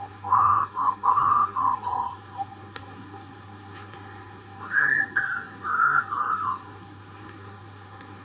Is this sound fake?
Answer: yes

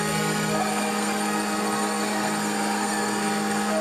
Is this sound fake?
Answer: yes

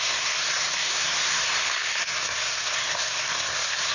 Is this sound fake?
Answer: yes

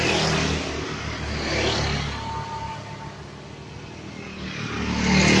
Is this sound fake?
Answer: no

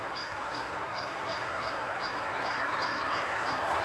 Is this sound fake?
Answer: yes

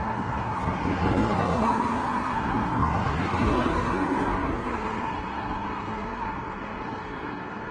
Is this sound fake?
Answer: yes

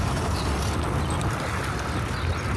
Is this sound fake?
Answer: no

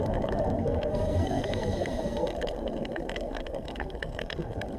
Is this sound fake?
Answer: yes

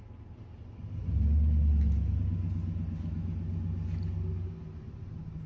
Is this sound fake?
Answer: no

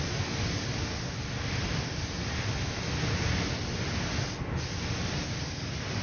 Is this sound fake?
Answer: no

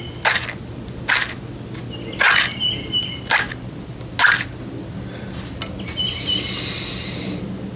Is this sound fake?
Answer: no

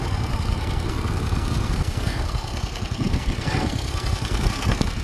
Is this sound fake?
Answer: yes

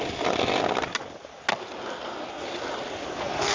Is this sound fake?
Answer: no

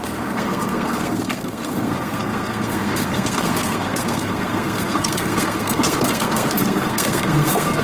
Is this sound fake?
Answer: yes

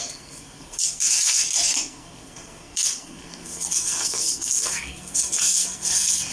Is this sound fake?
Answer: yes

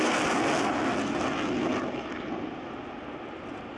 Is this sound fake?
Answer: no